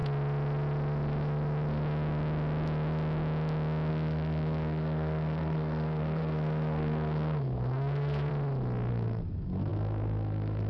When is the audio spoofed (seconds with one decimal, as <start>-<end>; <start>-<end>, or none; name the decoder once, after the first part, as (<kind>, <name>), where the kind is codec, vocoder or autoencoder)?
3.9-8.3 (codec, SNAC); 8.9-10.7